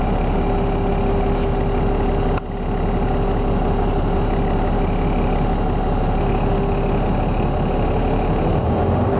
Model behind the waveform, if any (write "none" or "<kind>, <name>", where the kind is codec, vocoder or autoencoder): none